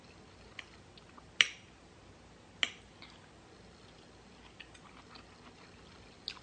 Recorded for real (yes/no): yes